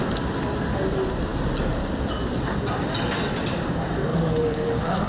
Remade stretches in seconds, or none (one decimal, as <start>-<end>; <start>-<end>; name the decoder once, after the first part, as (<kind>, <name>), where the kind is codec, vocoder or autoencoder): 4.1-5.1 (codec, DAC)